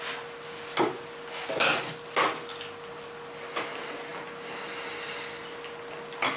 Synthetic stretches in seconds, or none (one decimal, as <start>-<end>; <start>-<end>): none